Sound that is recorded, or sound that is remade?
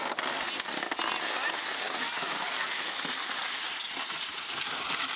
recorded